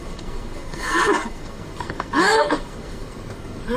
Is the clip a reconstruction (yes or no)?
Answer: yes